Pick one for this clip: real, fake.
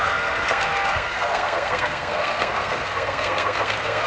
fake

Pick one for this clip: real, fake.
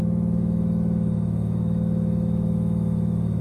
fake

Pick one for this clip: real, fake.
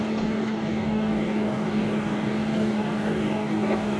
fake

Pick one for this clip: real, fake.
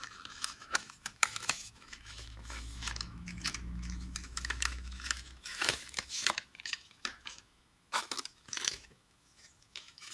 fake